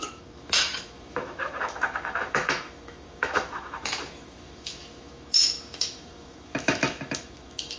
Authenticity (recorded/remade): remade